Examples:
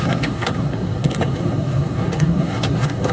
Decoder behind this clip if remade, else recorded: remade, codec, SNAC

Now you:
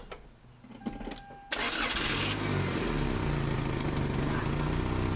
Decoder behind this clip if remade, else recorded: recorded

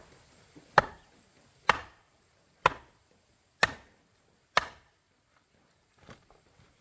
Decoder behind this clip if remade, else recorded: recorded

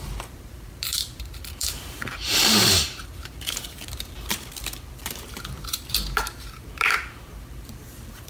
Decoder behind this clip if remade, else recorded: remade, vocoder, BigVGAN v2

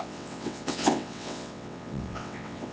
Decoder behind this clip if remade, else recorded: remade, vocoder, WaveNeXt